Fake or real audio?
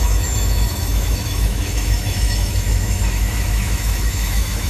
fake